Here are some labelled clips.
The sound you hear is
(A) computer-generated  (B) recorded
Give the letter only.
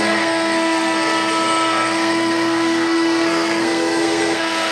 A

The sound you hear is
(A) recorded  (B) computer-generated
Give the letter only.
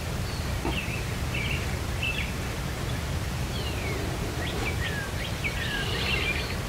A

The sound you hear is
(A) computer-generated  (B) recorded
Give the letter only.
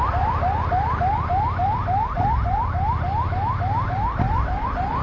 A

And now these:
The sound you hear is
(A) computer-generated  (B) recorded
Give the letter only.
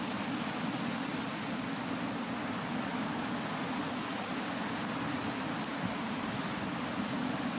B